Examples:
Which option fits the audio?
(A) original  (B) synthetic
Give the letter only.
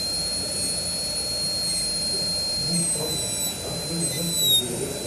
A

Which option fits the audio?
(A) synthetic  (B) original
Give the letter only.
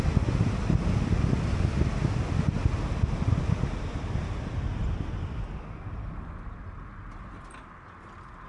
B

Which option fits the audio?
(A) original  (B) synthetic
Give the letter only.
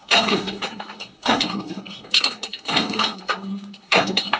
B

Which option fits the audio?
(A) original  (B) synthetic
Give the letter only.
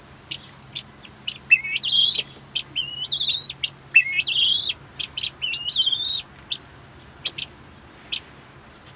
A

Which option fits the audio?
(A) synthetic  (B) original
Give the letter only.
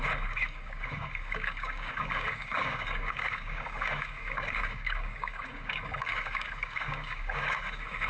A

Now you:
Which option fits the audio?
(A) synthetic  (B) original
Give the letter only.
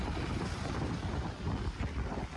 B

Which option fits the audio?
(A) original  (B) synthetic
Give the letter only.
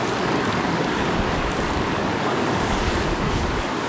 B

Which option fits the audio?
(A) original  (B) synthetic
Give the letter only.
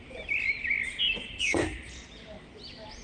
A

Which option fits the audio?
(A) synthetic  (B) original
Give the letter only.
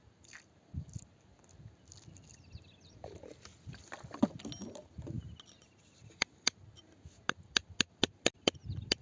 B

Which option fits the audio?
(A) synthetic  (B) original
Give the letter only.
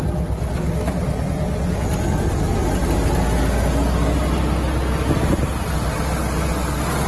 B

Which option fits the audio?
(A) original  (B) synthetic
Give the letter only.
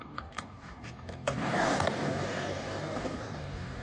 B